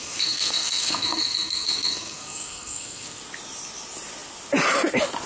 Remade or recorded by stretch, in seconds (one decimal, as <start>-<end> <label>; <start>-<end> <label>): 0.0-3.2 remade; 3.2-5.3 recorded